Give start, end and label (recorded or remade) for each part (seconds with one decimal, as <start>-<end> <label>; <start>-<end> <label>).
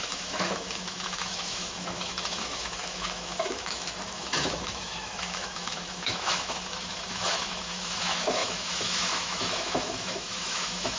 0.0-11.0 remade